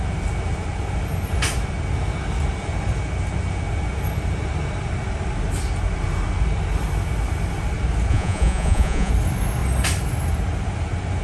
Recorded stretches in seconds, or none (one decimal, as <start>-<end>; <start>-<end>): 0.0-8.1; 9.1-11.2